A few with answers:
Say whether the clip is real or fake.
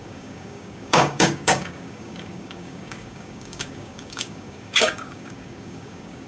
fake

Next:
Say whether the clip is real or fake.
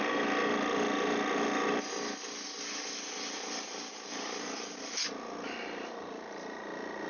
real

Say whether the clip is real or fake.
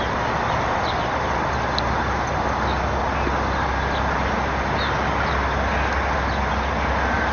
real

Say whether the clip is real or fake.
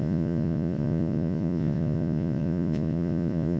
fake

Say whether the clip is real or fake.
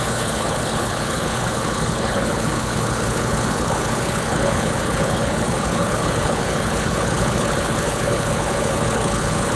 fake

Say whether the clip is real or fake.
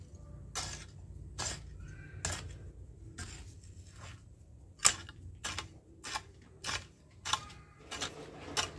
real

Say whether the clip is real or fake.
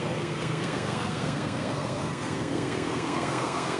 fake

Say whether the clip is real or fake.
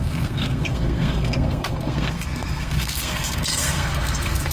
fake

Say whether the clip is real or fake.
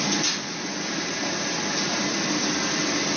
real